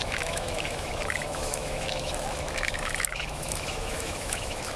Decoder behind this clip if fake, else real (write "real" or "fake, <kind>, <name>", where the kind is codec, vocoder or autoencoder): fake, autoencoder, DAC-VAE